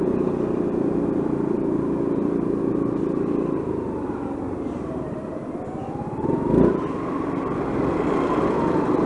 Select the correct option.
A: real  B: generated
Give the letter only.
B